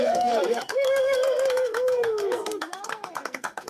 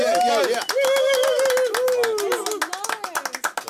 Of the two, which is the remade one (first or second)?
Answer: first